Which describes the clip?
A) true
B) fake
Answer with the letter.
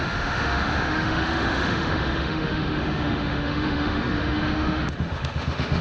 B